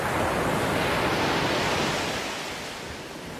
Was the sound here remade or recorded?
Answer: recorded